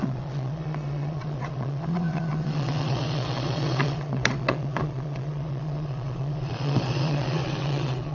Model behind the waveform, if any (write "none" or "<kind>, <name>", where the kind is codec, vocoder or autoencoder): vocoder, Vocos